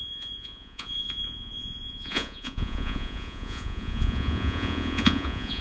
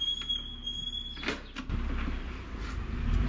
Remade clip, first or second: first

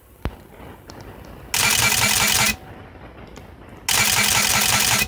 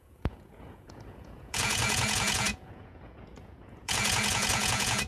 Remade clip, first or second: second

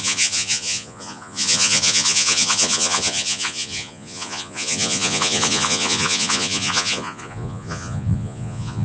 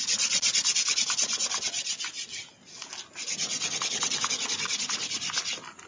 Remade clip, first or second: first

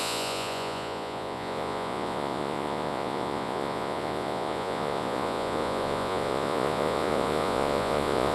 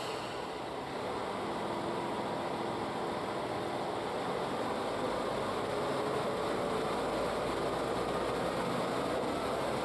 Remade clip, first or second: first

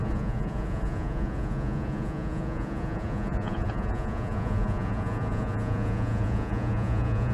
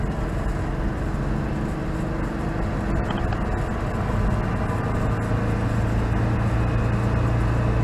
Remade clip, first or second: first